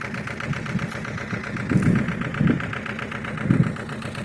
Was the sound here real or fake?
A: real